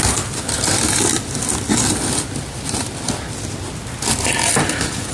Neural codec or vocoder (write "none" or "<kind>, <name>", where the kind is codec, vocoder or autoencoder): none